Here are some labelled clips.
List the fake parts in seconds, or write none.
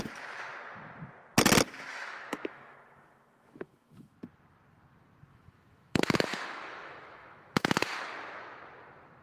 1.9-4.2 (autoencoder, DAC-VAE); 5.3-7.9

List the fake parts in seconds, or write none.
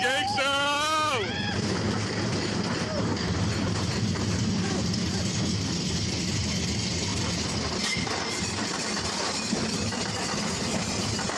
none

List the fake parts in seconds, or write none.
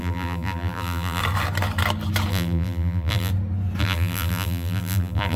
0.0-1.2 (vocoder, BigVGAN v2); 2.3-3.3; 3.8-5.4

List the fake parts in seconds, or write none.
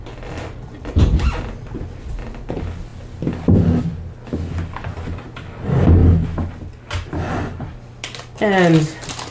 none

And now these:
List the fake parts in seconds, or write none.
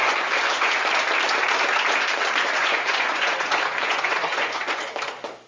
0.0-0.8 (vocoder, Vocos); 2.6-4.8